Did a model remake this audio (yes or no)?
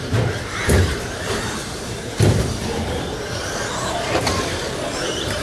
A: yes